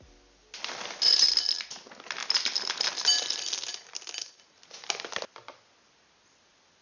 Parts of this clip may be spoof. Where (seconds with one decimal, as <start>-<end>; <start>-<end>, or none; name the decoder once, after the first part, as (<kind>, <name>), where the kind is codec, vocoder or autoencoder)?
none